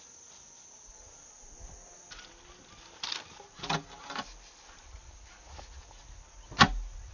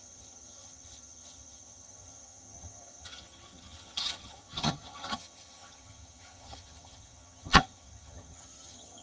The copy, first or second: second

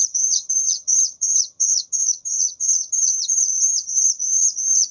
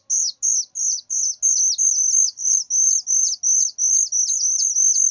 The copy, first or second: first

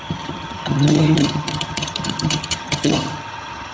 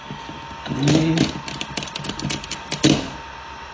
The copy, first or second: first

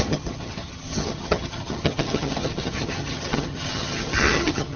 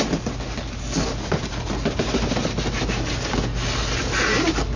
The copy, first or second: first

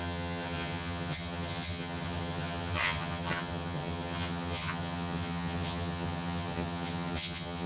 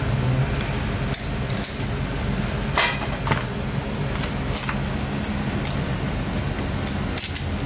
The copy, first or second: first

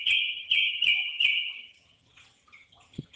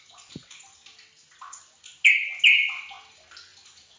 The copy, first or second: first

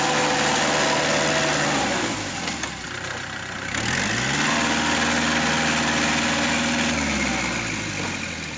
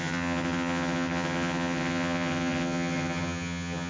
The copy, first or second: second